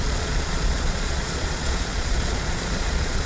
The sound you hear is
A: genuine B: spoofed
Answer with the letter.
B